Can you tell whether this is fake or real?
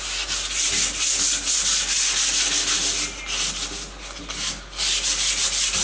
real